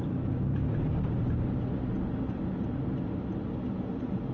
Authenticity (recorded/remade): recorded